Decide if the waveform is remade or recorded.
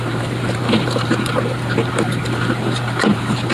remade